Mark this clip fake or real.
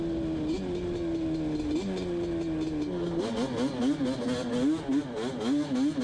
real